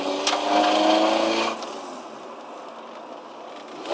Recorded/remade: recorded